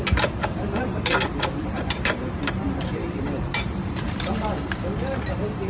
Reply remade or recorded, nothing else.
remade